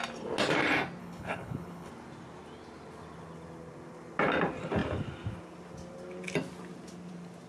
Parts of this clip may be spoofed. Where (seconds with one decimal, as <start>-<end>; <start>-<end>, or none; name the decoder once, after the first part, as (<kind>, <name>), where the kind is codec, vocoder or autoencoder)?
1.0-1.9 (codec, HILCodec)